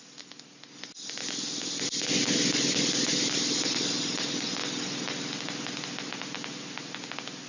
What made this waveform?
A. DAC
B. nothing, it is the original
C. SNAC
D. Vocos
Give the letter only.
B